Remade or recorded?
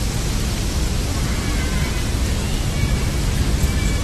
recorded